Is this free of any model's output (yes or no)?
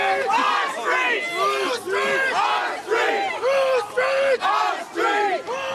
yes